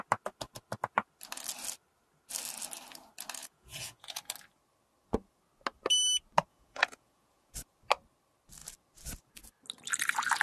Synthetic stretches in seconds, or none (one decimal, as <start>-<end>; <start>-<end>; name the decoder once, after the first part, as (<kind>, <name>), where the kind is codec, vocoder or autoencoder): 3.4-4.2 (vocoder, Vocos); 6.5-7.5